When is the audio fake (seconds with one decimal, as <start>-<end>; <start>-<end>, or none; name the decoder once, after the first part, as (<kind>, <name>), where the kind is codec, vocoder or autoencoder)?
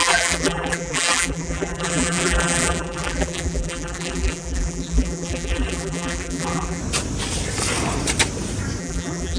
0.0-6.8 (vocoder, BigVGAN v2); 8.8-9.4